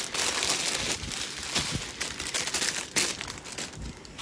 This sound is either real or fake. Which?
real